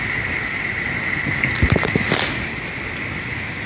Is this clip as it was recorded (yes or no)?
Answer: yes